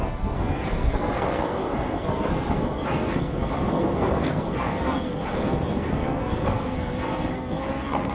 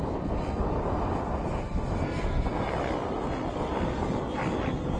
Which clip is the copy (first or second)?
first